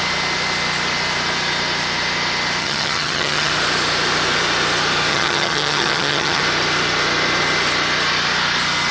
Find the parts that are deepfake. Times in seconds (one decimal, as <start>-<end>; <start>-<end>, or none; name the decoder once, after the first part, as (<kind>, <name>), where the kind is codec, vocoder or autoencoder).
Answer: 2.6-3.5 (vocoder, HiFi-GAN); 5.1-6.4